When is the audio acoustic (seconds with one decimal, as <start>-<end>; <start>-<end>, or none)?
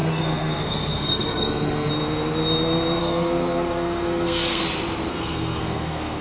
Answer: 1.9-3.0; 4.6-5.1